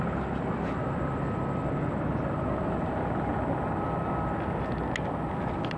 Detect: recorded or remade recorded